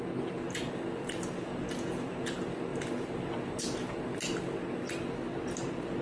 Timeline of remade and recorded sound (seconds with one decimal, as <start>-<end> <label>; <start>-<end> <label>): 0.0-1.5 recorded; 1.5-2.0 remade; 2.0-6.0 recorded